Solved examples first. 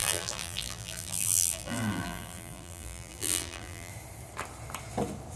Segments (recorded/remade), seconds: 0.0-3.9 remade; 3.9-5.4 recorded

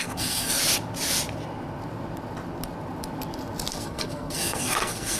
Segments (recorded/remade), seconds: 0.0-0.6 remade; 0.6-3.7 recorded; 3.7-5.2 remade

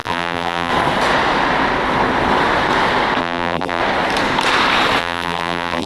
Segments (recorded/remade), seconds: 0.0-0.7 remade; 0.7-3.2 recorded; 3.2-3.8 remade; 3.8-5.0 recorded; 5.0-5.9 remade